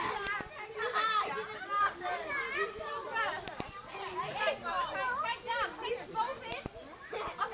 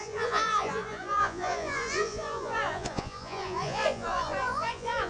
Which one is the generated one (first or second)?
second